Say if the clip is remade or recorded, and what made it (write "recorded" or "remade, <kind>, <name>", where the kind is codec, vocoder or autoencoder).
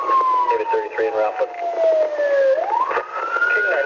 recorded